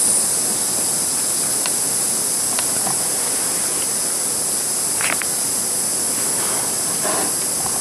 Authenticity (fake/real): real